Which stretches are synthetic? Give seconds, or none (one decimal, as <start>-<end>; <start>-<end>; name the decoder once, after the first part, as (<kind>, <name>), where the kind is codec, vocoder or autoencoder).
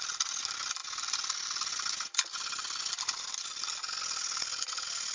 none